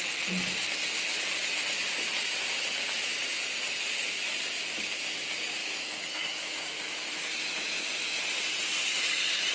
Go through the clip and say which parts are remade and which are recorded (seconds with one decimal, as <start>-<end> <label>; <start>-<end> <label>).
0.0-5.6 recorded; 5.6-8.2 remade; 8.2-9.5 recorded